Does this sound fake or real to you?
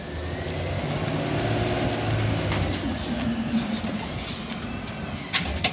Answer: real